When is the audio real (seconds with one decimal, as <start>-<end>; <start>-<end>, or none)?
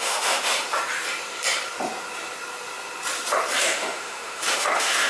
0.6-3.6